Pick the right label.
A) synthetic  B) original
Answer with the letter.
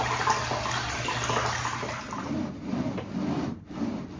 B